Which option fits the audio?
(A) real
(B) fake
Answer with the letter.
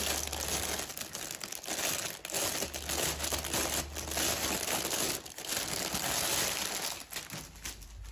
A